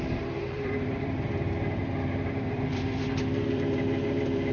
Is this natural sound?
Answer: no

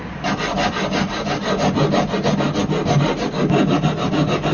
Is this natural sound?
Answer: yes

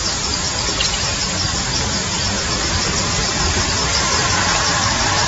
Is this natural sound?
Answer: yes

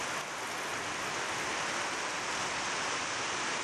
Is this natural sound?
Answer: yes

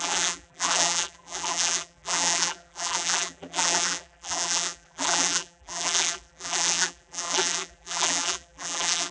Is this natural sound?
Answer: no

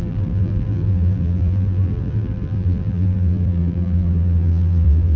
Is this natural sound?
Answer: no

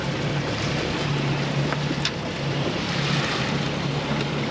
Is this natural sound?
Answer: yes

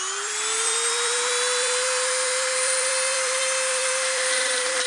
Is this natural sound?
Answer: no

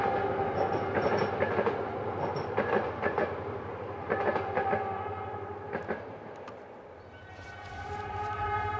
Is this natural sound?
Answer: yes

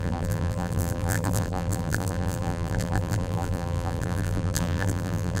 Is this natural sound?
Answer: no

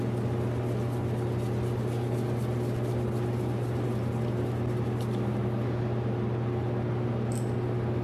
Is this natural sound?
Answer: yes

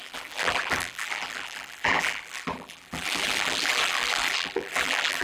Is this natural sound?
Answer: no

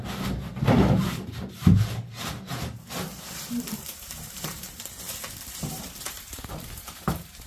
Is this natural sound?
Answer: no